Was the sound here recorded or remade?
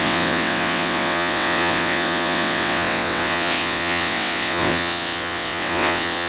remade